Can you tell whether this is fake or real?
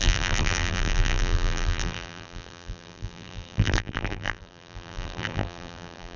fake